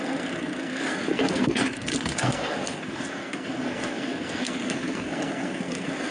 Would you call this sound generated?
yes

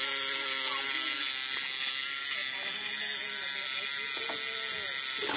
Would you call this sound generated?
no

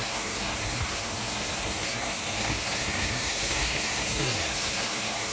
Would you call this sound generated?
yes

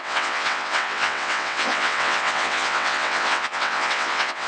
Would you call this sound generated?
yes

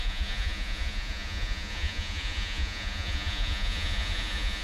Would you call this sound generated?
yes